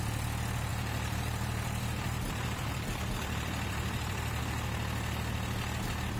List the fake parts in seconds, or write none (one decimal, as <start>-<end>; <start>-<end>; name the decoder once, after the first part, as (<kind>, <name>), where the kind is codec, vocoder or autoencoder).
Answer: 0.7-4.4 (vocoder, BigVGAN v2)